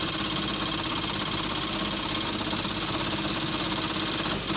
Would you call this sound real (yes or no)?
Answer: yes